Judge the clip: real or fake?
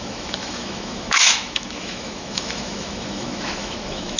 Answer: fake